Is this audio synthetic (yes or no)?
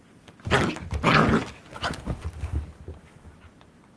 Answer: no